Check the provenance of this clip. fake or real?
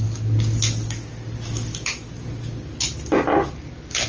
real